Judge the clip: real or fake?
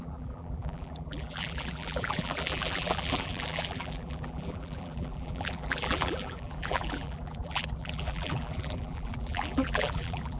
fake